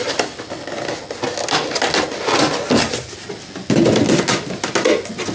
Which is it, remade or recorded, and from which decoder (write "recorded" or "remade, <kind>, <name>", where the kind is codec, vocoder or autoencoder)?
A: recorded